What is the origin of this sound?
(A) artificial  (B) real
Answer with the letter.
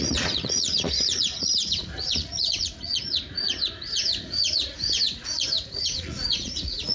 A